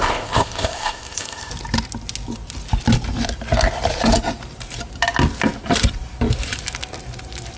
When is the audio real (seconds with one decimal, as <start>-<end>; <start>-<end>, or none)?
1.5-7.6